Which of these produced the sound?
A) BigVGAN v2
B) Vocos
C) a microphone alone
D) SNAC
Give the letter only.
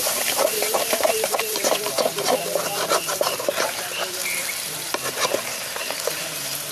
A